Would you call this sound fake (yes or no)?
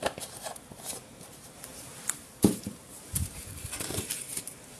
yes